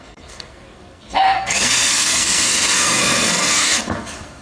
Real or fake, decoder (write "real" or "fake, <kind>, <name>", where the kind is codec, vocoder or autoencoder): fake, codec, SNAC